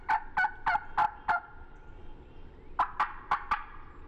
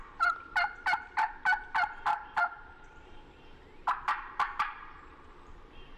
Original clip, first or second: first